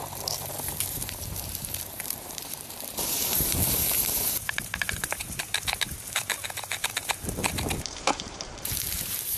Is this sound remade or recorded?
remade